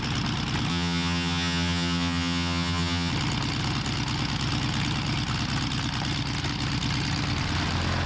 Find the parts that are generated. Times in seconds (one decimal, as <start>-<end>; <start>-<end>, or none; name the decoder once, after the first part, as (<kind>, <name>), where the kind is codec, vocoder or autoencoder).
0.7-3.1 (vocoder, HiFi-GAN)